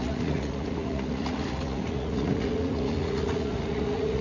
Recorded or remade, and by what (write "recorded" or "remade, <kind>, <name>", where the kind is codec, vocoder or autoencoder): remade, vocoder, Vocos